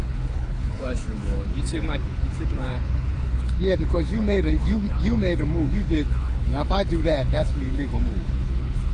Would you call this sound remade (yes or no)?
yes